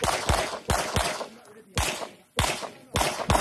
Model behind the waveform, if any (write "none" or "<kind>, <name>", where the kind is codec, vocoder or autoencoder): none